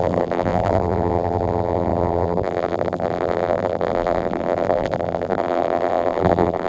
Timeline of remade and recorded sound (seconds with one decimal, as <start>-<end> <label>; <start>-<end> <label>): 0.0-6.7 remade